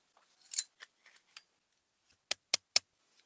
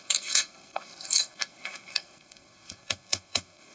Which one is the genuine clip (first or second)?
first